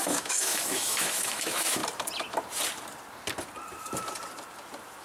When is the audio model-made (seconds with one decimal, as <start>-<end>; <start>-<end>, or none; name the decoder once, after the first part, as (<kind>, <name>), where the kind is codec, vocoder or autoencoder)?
0.0-1.8 (autoencoder, DAC-VAE)